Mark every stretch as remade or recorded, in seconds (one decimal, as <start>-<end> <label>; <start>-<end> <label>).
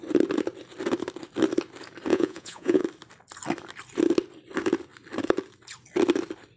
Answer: 0.0-2.1 recorded; 2.1-2.8 remade; 2.8-6.6 recorded